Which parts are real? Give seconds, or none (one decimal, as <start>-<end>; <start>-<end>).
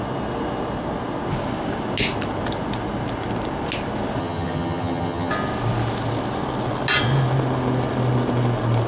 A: 0.0-4.2; 5.3-8.9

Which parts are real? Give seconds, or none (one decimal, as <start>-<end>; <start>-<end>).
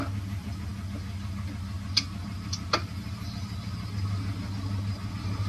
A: 0.0-5.5